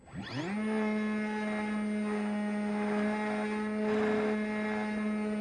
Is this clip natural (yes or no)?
yes